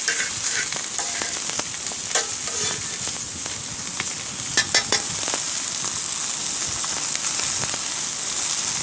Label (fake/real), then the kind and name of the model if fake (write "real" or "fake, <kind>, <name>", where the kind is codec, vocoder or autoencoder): real